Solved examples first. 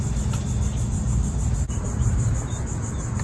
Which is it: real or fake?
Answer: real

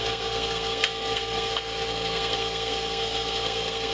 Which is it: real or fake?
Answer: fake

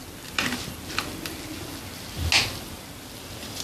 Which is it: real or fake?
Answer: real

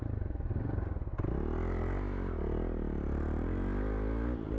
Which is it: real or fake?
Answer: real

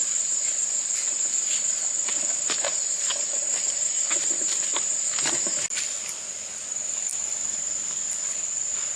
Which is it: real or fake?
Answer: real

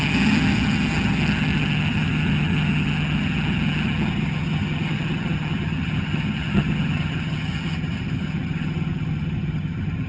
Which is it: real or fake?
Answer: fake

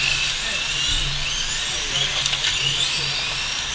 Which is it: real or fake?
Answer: real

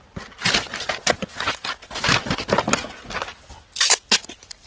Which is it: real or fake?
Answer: real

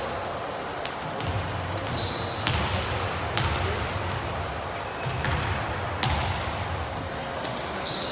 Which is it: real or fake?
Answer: real